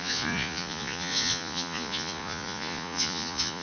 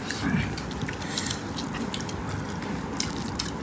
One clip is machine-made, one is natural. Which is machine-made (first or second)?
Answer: first